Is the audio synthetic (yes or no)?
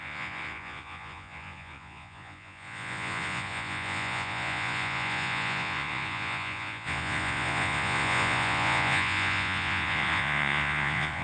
yes